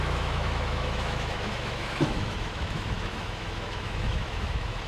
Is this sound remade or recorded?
remade